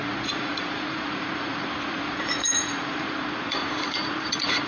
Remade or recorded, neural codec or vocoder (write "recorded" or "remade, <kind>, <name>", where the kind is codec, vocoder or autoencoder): remade, vocoder, Vocos